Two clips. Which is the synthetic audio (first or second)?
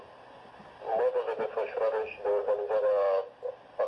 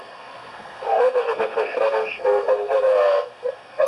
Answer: second